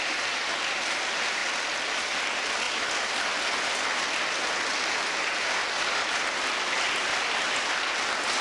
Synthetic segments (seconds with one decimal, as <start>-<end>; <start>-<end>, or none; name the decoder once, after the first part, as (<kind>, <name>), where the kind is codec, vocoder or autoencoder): none